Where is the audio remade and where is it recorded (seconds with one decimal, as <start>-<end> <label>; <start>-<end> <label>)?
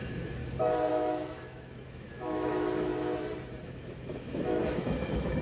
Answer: 0.0-0.4 remade; 0.4-0.9 recorded; 0.9-2.9 remade; 2.9-3.6 recorded; 3.6-5.4 remade